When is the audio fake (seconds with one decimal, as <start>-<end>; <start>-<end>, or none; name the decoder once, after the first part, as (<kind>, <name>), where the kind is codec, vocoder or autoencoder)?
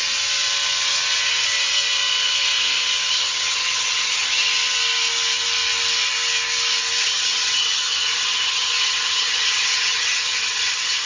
3.1-4.4 (vocoder, HiFi-GAN); 7.0-11.1